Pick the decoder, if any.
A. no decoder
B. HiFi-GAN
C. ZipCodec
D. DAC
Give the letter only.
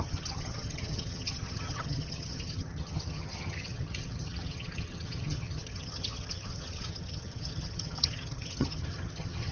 B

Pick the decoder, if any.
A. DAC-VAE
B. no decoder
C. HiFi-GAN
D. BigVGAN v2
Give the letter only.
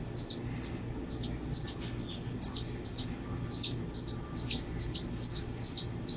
B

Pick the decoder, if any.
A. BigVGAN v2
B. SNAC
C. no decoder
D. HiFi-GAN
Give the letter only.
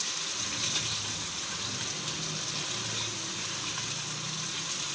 C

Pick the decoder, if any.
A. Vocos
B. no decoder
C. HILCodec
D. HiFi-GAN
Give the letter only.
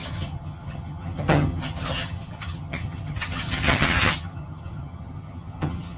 D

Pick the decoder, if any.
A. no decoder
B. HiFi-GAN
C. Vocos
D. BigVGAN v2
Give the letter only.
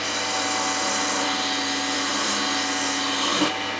A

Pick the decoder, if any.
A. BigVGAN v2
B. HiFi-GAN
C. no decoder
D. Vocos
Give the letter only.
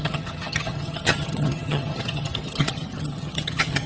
B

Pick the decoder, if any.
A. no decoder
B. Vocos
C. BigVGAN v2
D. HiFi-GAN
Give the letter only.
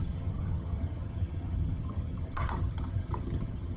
D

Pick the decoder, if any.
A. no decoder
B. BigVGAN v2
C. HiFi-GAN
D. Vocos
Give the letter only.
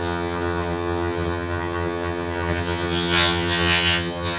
C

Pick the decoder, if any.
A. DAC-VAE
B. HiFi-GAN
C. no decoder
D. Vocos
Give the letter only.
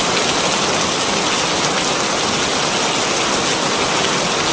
C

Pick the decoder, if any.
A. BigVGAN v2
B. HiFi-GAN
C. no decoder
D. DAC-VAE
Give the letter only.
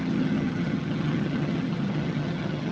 B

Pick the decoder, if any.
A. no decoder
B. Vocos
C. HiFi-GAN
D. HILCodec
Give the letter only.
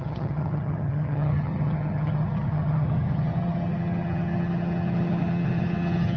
C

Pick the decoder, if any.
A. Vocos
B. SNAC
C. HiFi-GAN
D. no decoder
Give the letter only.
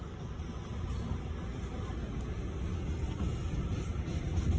D